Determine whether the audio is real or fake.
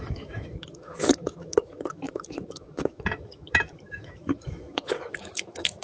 fake